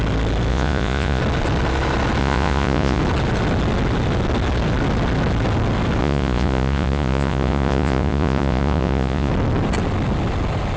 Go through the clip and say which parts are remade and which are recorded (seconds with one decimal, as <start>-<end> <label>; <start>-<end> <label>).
0.0-0.5 recorded; 0.5-1.2 remade; 1.2-2.2 recorded; 2.2-3.0 remade; 3.0-6.0 recorded; 6.0-9.3 remade; 9.3-10.8 recorded